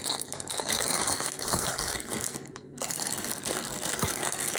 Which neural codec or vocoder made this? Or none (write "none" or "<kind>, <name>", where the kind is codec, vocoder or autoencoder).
codec, SNAC